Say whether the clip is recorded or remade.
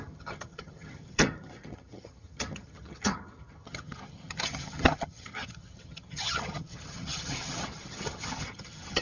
remade